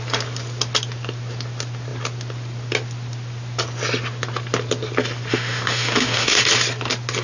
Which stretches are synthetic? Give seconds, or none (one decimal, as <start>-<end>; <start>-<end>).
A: 5.3-6.4